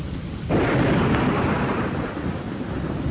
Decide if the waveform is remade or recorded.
recorded